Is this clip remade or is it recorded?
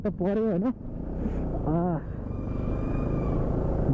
recorded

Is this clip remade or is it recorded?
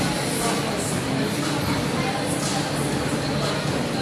recorded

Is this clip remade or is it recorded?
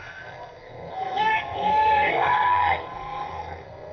remade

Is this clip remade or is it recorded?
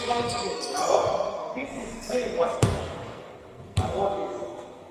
remade